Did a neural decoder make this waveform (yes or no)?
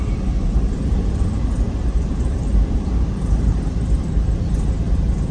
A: yes